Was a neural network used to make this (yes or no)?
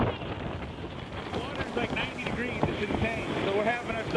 no